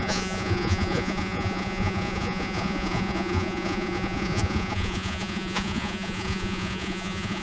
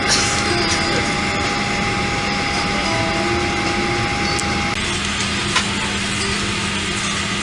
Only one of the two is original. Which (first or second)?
second